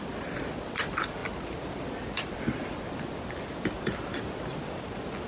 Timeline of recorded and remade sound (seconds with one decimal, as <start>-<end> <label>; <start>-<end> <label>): 0.0-5.3 recorded